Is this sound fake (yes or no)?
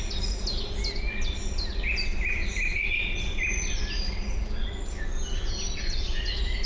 no